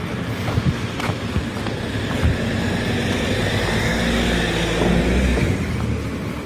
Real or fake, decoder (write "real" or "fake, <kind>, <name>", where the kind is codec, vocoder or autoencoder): real